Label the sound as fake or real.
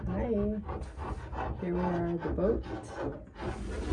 real